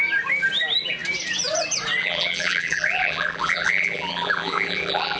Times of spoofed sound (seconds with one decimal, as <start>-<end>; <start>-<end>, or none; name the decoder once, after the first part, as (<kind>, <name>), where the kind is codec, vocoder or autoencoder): 2.0-5.2 (vocoder, BigVGAN v2)